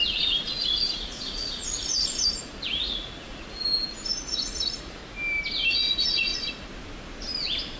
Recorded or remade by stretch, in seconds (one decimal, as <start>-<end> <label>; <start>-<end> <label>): 0.0-5.0 remade; 5.0-5.7 recorded; 5.7-6.3 remade; 6.3-7.8 recorded